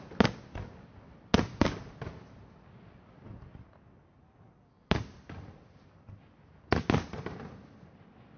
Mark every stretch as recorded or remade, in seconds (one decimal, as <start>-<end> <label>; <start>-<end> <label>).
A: 0.0-8.4 recorded